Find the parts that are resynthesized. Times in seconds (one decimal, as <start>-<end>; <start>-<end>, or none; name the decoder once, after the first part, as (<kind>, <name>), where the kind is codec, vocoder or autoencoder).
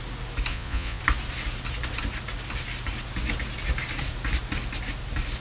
0.5-1.0 (vocoder, Vocos)